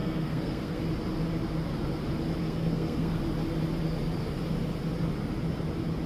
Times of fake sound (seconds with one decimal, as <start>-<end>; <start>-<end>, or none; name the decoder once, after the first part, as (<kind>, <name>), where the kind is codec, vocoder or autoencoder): 0.0-0.8 (codec, SNAC); 2.4-3.2